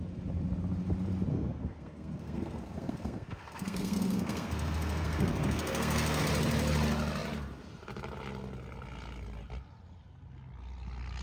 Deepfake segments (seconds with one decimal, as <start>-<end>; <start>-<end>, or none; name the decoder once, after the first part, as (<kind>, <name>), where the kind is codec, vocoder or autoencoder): 1.3-6.2 (codec, SNAC)

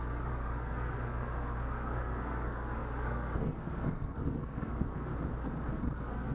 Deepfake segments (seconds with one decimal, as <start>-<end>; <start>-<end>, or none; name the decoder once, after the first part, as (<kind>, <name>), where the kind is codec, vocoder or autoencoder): 0.0-5.1 (codec, SNAC); 5.7-6.3

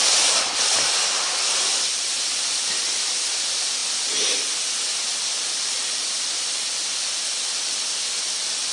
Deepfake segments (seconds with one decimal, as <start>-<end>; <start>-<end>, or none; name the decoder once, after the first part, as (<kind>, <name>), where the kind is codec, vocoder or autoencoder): none

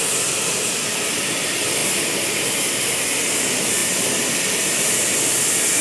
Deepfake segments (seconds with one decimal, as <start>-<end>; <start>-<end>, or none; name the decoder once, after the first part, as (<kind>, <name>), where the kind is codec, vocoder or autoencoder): none

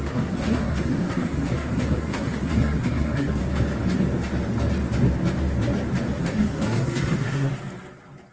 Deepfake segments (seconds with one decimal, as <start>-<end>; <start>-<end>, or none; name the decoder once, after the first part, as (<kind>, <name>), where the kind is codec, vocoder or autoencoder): 0.0-3.4 (codec, SNAC); 6.2-7.5

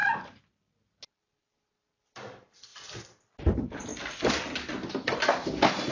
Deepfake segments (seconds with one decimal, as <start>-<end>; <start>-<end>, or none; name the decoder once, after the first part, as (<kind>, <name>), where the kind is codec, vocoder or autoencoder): none